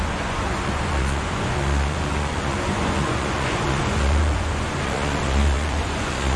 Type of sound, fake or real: fake